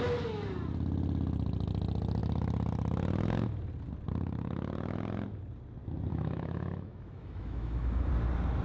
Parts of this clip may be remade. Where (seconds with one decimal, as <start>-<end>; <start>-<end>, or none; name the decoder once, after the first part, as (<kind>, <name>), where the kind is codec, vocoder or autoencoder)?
6.1-8.1 (autoencoder, DAC-VAE)